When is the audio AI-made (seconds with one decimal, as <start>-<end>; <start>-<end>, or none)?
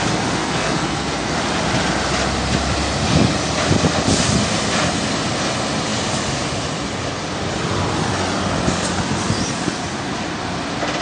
0.4-1.3